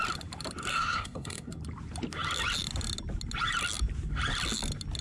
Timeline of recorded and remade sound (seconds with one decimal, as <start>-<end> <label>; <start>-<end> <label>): 0.0-0.7 recorded; 0.7-1.5 remade; 1.5-5.0 recorded